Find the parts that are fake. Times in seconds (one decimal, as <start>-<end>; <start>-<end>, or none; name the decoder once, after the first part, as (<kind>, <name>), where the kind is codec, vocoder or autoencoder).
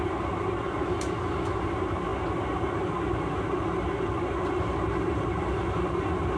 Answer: none